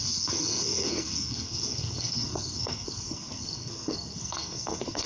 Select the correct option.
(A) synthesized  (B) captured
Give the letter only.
A